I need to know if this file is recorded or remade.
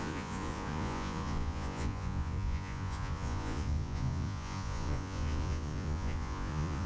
remade